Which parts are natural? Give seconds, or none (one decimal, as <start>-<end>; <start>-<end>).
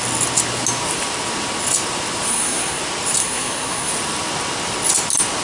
0.0-2.3; 2.8-3.2; 3.9-5.4